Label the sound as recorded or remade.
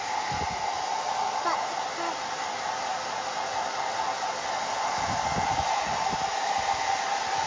recorded